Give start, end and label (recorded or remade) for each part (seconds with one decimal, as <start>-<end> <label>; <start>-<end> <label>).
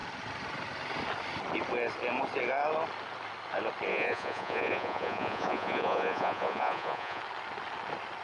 0.0-3.9 recorded; 3.9-7.2 remade; 7.2-8.2 recorded